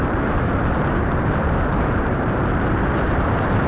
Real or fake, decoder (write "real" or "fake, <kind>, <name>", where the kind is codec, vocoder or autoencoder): fake, vocoder, BigVGAN v2